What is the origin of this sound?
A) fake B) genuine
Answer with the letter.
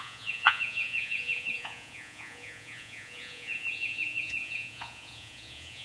A